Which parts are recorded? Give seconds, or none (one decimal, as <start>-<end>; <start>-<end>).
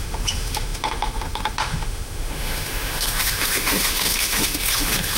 none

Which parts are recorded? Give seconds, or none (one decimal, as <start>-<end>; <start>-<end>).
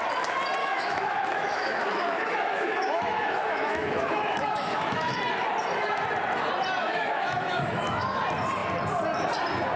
0.0-0.6; 5.2-6.8; 8.2-9.8